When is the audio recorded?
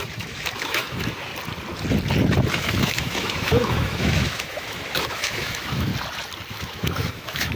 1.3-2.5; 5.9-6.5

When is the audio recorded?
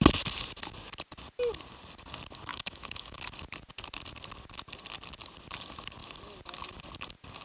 0.0-2.5; 3.2-7.4